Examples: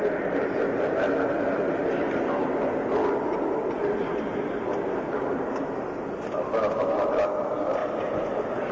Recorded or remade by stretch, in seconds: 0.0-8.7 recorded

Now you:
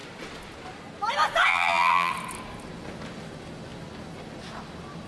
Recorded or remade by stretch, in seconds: 0.0-1.5 recorded; 1.5-2.1 remade; 2.1-5.1 recorded

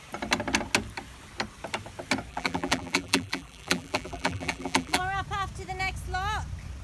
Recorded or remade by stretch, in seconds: 0.0-2.3 recorded; 2.3-5.0 remade; 5.0-6.8 recorded

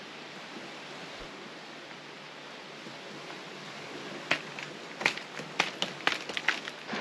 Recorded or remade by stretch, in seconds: 0.0-7.0 recorded

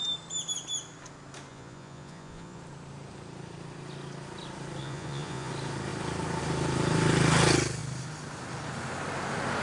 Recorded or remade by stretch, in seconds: 0.0-1.5 recorded; 1.5-2.6 remade; 2.6-4.8 recorded; 4.8-5.5 remade; 5.5-9.6 recorded

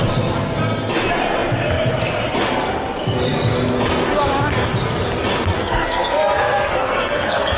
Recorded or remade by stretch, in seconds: 0.0-5.5 recorded; 5.5-7.6 remade